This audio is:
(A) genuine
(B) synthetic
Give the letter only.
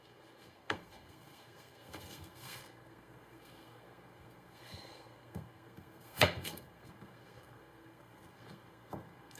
B